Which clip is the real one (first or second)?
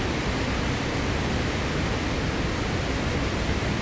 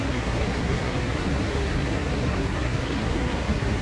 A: first